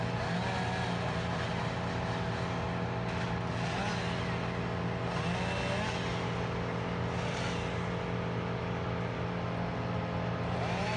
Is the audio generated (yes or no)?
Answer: no